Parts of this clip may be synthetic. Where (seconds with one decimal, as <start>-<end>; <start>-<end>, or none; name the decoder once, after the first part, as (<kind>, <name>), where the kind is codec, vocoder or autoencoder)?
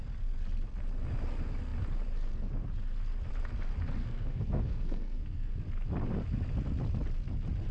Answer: 4.0-5.5 (codec, SNAC)